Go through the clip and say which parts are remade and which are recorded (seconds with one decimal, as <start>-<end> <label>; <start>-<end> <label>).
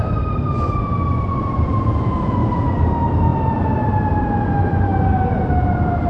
0.0-3.3 remade; 3.3-4.4 recorded; 4.4-4.9 remade; 4.9-6.1 recorded